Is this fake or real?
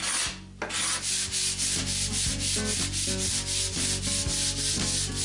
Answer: real